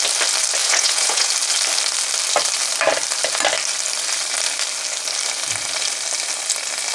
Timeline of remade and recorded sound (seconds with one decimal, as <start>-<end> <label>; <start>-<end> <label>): 0.0-0.6 recorded; 0.6-1.3 remade; 1.3-6.9 recorded

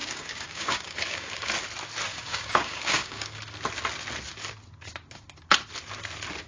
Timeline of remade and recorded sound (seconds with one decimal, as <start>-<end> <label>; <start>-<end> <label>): 0.0-1.5 remade; 1.5-2.1 recorded; 2.1-3.4 remade; 3.4-6.5 recorded

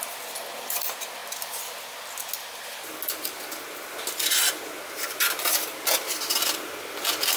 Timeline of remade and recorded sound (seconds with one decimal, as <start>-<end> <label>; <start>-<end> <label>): 0.0-7.4 recorded

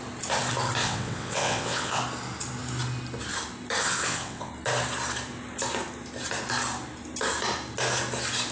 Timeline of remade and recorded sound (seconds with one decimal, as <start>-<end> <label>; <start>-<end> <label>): 0.0-0.8 recorded; 0.8-2.0 remade; 2.0-3.8 recorded; 3.8-4.5 remade; 4.5-8.5 recorded

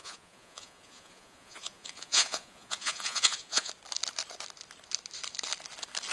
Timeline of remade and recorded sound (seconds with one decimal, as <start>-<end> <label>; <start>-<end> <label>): 0.0-3.7 remade; 3.7-6.1 recorded

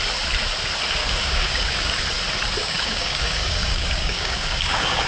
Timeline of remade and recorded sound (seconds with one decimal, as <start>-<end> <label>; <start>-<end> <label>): 0.0-1.0 recorded; 1.0-2.0 remade; 2.0-2.6 recorded; 2.6-5.1 remade

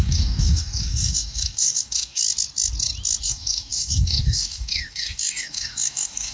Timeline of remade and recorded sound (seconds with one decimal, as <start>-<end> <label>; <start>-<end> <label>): 0.0-2.2 remade; 2.2-3.2 recorded; 3.2-6.3 remade

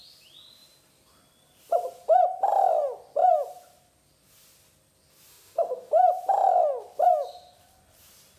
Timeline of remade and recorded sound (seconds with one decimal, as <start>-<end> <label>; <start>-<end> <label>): 0.0-5.3 recorded; 5.3-5.9 remade; 5.9-8.4 recorded